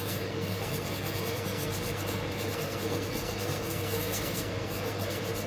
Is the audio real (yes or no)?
no